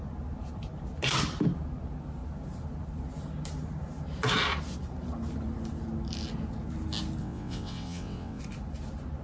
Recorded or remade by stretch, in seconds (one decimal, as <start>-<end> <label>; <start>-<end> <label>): 0.0-7.2 recorded; 7.2-8.4 remade; 8.4-9.2 recorded

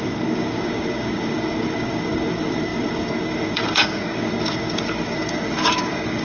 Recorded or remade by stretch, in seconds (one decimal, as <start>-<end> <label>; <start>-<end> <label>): 0.0-6.2 remade

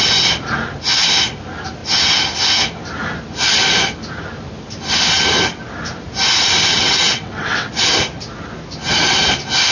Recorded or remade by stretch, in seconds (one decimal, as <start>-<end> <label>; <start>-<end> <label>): 0.0-6.7 recorded; 6.7-7.7 remade; 7.7-9.7 recorded

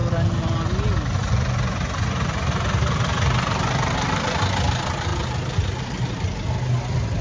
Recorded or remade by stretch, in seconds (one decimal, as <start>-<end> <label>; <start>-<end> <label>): 0.0-7.2 recorded